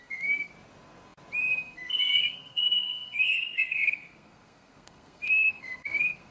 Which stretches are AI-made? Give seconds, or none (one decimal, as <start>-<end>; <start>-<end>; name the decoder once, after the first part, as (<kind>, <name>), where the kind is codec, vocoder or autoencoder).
0.0-0.5 (codec, SNAC); 1.5-6.3